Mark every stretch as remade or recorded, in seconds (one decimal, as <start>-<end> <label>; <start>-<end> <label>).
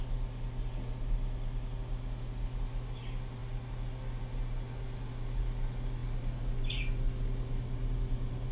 0.0-8.5 recorded